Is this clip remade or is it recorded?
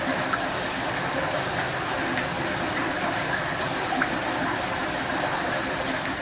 recorded